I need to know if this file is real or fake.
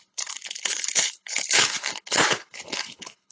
fake